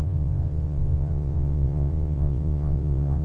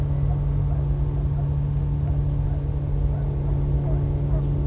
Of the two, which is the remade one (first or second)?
first